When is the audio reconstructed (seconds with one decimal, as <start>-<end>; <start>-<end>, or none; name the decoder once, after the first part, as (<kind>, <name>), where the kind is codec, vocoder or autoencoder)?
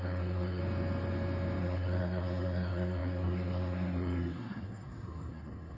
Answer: 0.0-0.6 (codec, SNAC); 1.6-5.8